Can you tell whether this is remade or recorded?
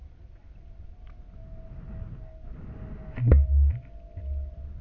recorded